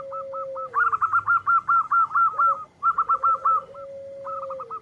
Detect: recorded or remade recorded